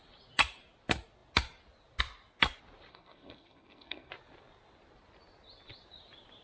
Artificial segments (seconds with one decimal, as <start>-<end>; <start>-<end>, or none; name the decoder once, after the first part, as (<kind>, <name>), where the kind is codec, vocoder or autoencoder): 2.9-4.1 (codec, SNAC)